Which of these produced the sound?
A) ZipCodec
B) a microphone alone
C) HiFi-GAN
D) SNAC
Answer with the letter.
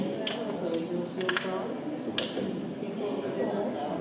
B